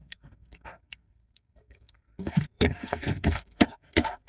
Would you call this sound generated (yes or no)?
yes